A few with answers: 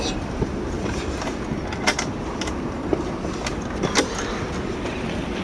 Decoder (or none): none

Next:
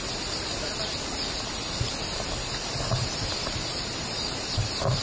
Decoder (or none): vocoder, BigVGAN v2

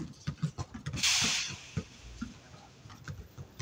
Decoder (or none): none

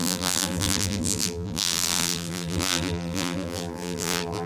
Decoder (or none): vocoder, BigVGAN v2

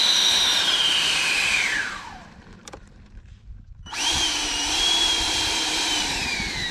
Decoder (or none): vocoder, BigVGAN v2